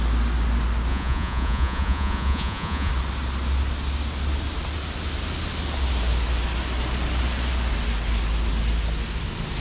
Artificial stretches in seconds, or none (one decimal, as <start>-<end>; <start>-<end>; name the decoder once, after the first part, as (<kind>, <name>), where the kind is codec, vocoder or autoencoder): 0.9-2.9 (vocoder, Vocos)